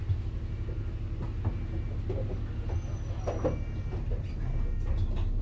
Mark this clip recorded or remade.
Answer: recorded